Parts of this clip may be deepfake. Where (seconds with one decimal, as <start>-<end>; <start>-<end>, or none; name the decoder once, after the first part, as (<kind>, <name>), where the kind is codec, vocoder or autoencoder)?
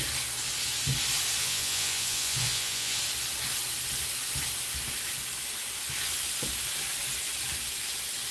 1.4-3.0 (vocoder, Vocos)